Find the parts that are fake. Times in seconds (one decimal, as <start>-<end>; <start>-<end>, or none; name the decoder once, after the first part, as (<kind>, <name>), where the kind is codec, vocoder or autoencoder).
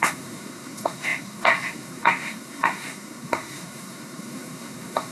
0.0-5.1 (codec, SNAC)